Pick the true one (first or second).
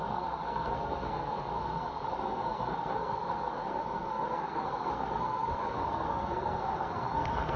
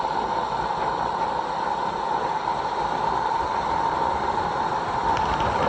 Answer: second